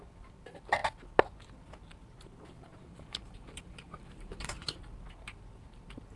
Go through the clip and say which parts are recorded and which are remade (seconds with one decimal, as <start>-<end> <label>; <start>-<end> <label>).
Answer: 0.0-2.7 recorded; 2.7-4.8 remade; 4.8-6.2 recorded

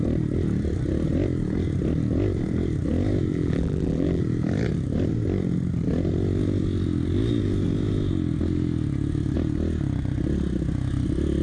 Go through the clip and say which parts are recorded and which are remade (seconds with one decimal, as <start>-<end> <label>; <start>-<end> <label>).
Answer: 0.0-3.3 recorded; 3.3-4.2 remade; 4.2-11.4 recorded

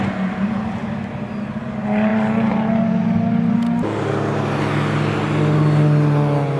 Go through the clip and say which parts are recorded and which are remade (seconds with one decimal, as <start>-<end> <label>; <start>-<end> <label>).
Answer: 0.0-6.6 recorded

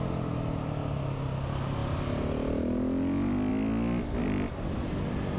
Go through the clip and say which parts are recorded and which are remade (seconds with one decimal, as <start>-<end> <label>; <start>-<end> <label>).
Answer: 0.0-5.4 recorded

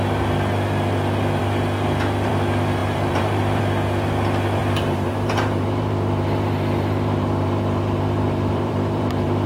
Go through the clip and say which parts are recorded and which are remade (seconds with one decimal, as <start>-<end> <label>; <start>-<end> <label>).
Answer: 0.0-2.8 recorded; 2.8-3.6 remade; 3.6-4.6 recorded; 4.6-9.5 remade